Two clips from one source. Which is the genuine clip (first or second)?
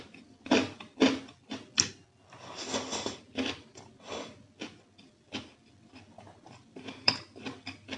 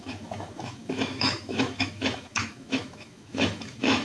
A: first